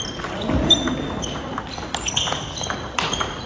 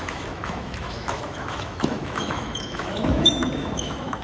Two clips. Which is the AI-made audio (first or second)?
second